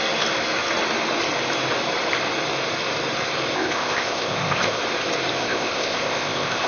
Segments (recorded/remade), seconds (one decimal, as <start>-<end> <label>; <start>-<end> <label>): 0.0-3.5 recorded; 3.5-4.8 remade; 4.8-5.4 recorded; 5.4-6.7 remade